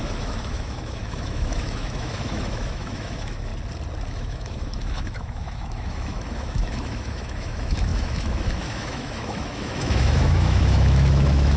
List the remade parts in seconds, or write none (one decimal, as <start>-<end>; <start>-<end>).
0.0-3.5; 4.1-11.6